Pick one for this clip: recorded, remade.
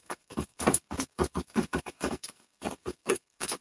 remade